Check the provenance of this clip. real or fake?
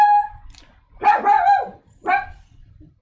real